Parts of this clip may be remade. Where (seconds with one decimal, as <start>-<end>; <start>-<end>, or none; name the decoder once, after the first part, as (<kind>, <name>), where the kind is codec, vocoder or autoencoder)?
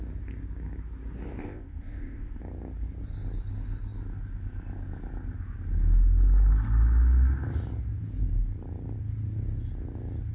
1.4-2.4 (codec, ZipCodec)